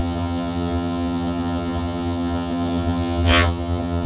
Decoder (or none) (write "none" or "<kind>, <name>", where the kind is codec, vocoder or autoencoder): vocoder, HiFi-GAN